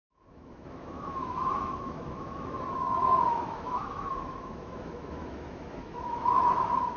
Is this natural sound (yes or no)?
no